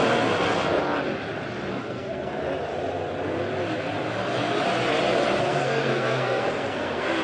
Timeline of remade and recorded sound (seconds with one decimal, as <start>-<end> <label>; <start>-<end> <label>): 0.0-1.7 recorded; 1.7-2.4 remade; 2.4-5.4 recorded; 5.4-7.2 remade